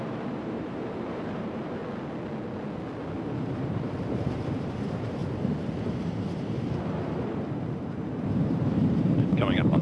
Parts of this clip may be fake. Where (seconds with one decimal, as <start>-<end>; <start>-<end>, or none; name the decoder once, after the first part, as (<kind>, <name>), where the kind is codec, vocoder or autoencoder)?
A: 0.0-1.8 (vocoder, BigVGAN v2); 3.4-5.2; 5.9-9.8

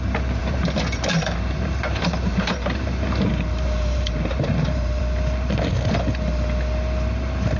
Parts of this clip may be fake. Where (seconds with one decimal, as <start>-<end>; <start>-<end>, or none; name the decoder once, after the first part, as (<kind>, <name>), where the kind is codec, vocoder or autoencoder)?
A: 0.4-5.0 (vocoder, BigVGAN v2)

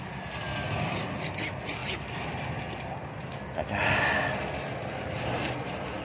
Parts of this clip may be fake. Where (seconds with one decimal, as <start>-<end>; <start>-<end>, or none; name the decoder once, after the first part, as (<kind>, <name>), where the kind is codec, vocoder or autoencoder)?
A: 4.8-5.4 (vocoder, BigVGAN v2)

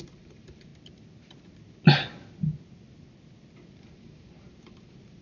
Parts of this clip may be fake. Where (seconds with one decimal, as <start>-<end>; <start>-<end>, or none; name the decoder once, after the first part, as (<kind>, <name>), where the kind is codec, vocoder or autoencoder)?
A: 0.0-0.7 (vocoder, BigVGAN v2); 3.8-5.2

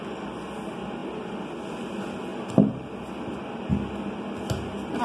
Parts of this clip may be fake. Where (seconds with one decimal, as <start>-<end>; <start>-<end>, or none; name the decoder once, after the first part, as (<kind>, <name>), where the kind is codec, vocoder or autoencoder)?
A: 2.3-3.1 (vocoder, BigVGAN v2)

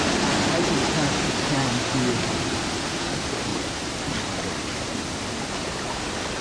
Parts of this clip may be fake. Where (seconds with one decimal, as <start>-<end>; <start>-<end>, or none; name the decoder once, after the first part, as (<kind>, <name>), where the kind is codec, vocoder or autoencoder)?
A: none